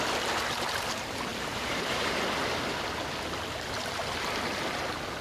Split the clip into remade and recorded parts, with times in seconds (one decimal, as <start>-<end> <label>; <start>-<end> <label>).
0.0-1.3 recorded; 1.3-2.1 remade; 2.1-5.2 recorded